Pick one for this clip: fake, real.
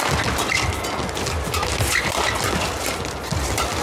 real